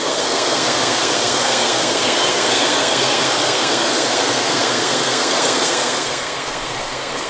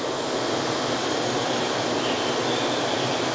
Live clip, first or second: second